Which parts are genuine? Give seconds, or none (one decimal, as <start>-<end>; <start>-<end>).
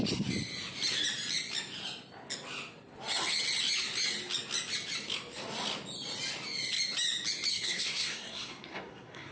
0.0-7.5